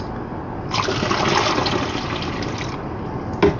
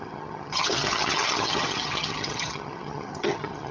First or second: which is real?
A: first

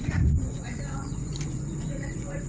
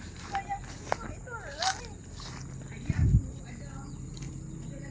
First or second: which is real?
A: second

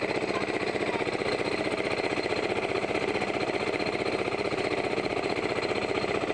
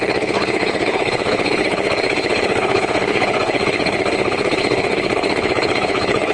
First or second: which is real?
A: first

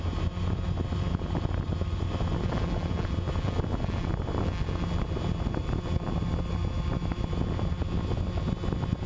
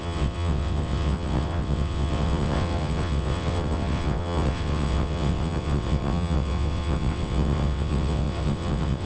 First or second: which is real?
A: first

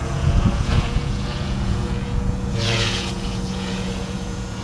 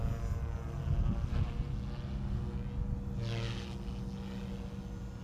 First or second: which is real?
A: second